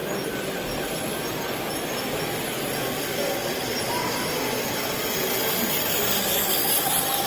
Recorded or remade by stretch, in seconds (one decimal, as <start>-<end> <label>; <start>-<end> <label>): 0.0-7.3 recorded